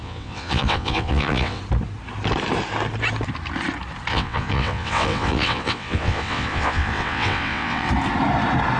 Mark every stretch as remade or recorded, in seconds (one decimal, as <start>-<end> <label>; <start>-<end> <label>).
0.0-1.6 remade; 1.6-4.1 recorded; 4.1-7.9 remade; 7.9-8.8 recorded